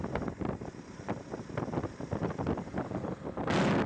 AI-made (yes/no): no